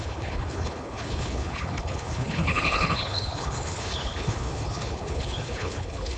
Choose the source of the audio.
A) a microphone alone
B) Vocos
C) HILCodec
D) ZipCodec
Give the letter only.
C